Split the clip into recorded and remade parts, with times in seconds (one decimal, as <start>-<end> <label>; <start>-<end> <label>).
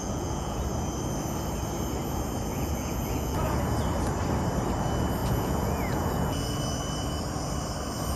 0.0-0.6 remade; 0.6-2.5 recorded; 2.5-3.6 remade; 3.6-5.2 recorded; 5.2-6.6 remade; 6.6-8.2 recorded